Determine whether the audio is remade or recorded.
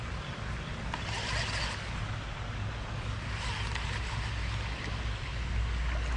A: recorded